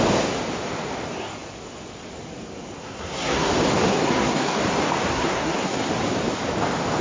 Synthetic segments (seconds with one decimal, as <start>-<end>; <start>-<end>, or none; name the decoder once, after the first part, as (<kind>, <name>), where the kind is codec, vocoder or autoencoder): 2.8-3.5 (codec, SNAC); 3.9-4.6; 5.1-5.9